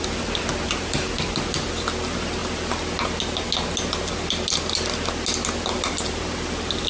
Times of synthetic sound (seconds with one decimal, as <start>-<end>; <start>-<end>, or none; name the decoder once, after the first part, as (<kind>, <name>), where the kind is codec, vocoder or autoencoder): none